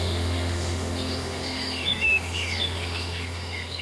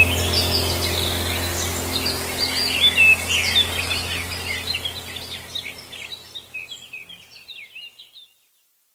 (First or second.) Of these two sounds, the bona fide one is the second